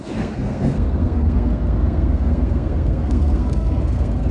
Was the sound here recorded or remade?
remade